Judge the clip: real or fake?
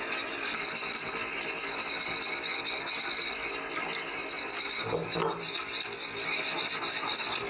real